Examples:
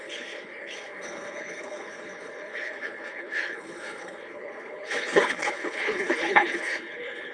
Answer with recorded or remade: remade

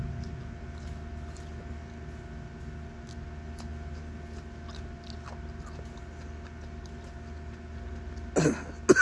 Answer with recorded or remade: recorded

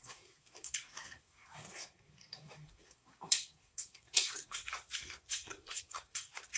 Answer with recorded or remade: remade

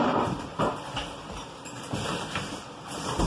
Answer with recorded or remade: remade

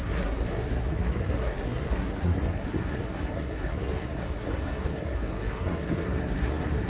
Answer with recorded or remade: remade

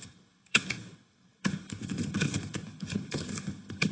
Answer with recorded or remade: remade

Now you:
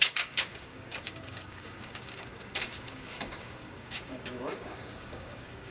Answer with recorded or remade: remade